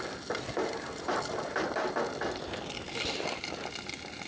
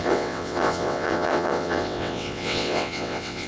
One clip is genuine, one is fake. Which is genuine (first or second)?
first